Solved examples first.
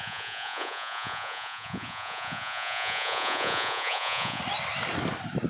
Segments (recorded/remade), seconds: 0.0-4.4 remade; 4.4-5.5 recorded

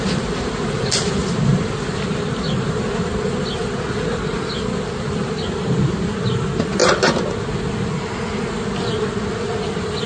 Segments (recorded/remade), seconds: 0.0-10.1 recorded